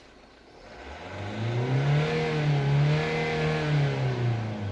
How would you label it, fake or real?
real